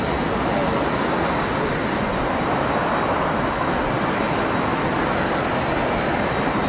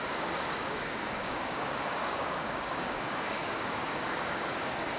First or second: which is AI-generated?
second